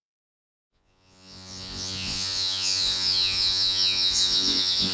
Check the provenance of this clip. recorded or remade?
remade